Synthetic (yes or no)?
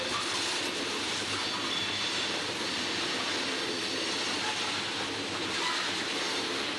no